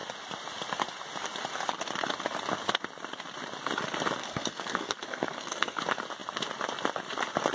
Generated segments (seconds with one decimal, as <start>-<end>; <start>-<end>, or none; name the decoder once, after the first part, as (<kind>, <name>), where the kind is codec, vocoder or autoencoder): 4.2-5.8 (codec, SNAC)